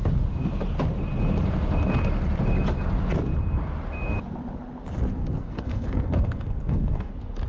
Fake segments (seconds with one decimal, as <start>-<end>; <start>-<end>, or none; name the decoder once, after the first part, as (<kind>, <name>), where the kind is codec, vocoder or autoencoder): 5.2-7.1 (codec, SNAC)